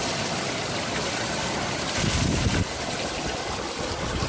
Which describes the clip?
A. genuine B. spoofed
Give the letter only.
A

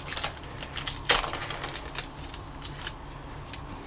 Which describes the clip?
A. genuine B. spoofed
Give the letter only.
A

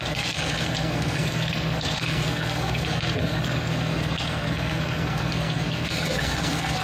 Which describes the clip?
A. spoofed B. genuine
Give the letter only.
A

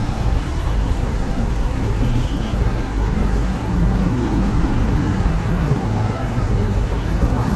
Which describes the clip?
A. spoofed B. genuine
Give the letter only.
A